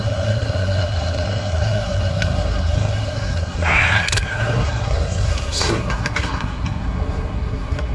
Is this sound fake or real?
fake